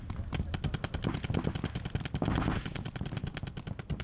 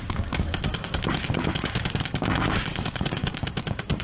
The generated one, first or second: second